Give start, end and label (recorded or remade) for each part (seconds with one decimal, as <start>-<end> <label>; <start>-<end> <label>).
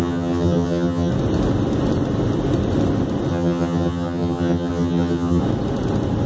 0.0-1.1 remade; 1.1-3.3 recorded; 3.3-5.4 remade; 5.4-6.3 recorded